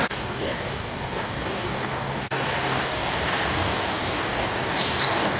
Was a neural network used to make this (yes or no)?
yes